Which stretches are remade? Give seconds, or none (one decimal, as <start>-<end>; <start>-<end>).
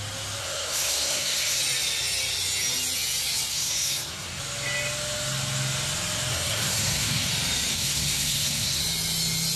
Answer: 0.4-1.6; 3.5-4.4; 6.3-7.3; 7.7-8.8